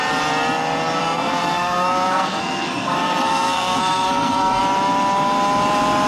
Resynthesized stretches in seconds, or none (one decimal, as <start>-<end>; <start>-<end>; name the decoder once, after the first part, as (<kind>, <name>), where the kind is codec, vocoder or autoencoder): 1.0-4.6 (codec, SNAC)